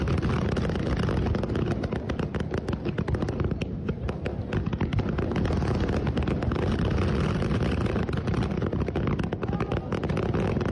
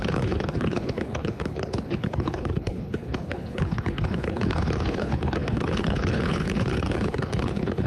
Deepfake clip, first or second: second